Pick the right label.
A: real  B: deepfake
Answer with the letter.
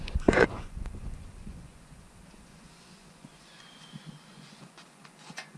B